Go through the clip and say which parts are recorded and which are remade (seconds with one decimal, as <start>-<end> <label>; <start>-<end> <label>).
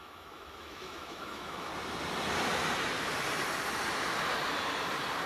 0.0-1.7 remade; 1.7-5.3 recorded